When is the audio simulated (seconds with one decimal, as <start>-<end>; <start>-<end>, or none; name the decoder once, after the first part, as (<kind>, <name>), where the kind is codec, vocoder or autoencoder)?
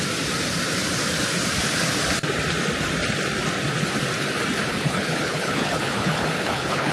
4.7-6.9 (codec, HILCodec)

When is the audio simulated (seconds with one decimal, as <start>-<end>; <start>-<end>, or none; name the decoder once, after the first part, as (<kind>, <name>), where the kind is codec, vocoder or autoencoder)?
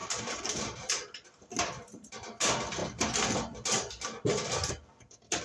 0.0-2.1 (vocoder, BigVGAN v2)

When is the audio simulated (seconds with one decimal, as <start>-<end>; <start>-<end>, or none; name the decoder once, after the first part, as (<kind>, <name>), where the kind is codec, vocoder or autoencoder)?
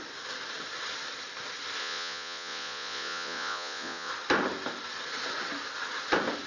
1.8-4.1 (vocoder, Vocos)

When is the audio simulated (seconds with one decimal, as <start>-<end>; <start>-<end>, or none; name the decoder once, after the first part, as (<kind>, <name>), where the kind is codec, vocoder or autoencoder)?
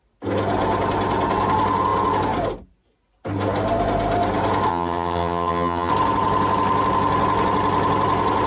4.7-5.9 (vocoder, HiFi-GAN)